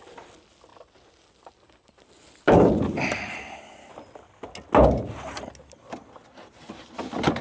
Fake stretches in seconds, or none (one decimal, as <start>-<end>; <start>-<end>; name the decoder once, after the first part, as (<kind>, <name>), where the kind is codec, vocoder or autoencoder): none